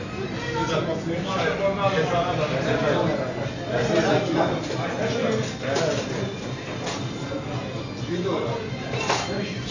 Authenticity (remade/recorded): recorded